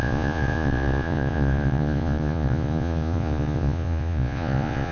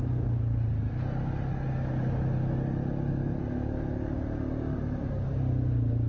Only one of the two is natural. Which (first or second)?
second